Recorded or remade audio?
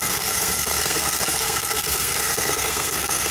remade